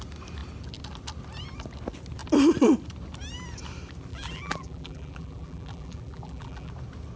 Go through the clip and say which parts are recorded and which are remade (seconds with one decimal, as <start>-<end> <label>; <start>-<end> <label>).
0.0-4.1 recorded; 4.1-6.7 remade; 6.7-7.2 recorded